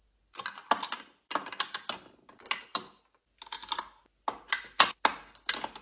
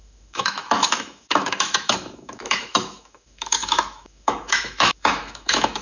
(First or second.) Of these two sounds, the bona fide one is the first